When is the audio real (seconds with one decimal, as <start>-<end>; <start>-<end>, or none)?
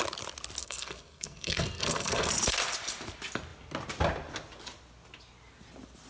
0.0-0.6; 2.3-6.1